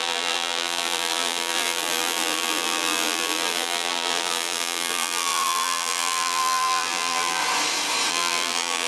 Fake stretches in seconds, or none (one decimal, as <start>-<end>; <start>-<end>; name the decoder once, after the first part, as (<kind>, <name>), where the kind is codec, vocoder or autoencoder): 0.0-7.4 (vocoder, BigVGAN v2); 8.1-8.9